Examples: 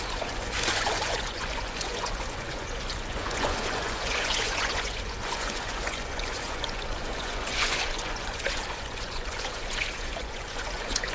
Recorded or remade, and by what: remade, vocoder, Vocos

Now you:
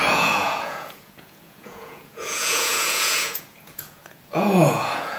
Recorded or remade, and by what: remade, vocoder, Vocos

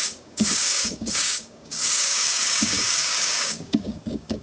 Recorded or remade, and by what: remade, codec, DAC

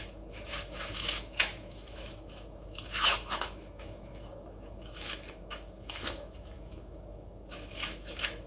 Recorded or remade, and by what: remade, autoencoder, DAC-VAE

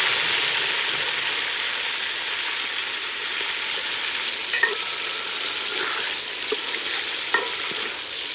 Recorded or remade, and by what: recorded